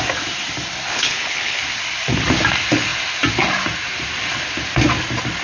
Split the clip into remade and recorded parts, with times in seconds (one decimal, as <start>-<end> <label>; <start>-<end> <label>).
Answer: 0.0-0.9 recorded; 0.9-1.6 remade; 1.6-5.4 recorded